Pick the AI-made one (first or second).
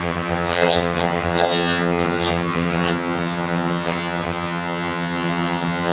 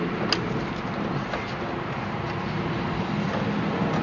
first